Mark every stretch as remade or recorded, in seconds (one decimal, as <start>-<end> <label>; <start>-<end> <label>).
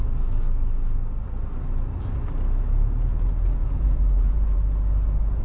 0.0-3.6 recorded; 3.6-4.6 remade; 4.6-5.4 recorded